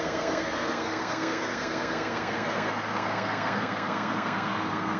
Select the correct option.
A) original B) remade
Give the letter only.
B